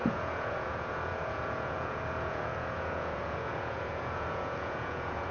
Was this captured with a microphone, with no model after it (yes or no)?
no